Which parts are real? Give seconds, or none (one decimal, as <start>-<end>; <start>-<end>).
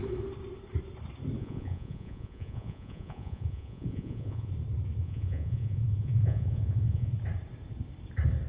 0.0-1.4; 4.5-5.0; 7.1-8.5